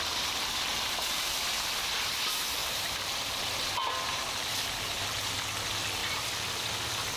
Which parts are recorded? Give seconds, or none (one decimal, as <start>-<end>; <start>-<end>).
0.0-0.7; 1.2-2.6; 5.0-6.0; 6.6-7.2